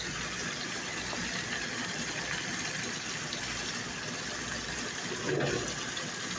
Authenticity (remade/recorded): recorded